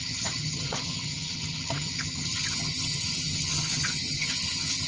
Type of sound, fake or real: fake